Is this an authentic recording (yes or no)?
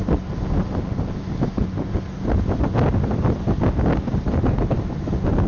yes